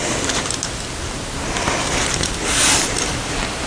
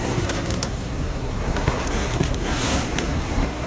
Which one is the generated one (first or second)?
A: second